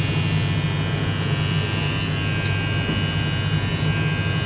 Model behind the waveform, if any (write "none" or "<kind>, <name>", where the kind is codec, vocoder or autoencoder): none